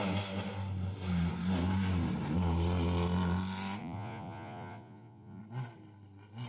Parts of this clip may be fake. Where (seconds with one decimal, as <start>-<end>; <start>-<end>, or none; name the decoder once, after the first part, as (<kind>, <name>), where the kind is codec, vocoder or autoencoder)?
3.8-5.4 (vocoder, Vocos)